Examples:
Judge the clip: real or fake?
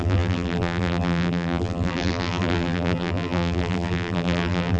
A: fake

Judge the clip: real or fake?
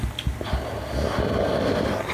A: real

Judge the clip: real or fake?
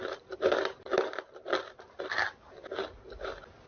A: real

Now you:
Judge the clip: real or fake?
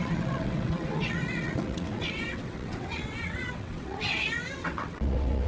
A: fake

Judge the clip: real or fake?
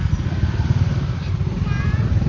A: real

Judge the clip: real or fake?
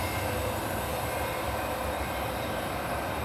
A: real